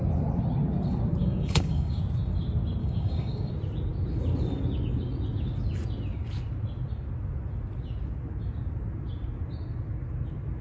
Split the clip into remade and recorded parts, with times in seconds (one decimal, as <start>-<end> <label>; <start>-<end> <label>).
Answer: 0.0-1.2 recorded; 1.2-2.0 remade; 2.0-2.8 recorded; 2.8-3.5 remade; 3.5-10.6 recorded